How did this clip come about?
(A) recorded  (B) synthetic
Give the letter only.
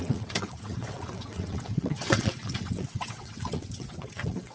B